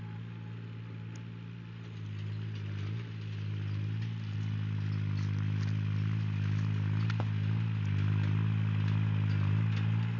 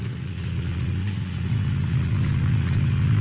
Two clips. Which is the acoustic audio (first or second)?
first